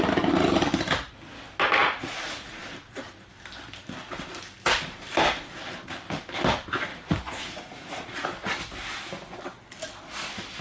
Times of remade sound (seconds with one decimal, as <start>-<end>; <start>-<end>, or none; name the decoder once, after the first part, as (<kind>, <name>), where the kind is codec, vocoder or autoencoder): 1.8-2.6 (vocoder, Vocos); 6.9-8.1